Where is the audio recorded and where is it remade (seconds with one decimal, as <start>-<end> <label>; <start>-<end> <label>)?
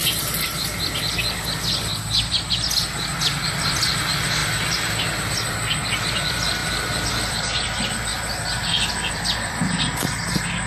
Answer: 0.0-10.7 recorded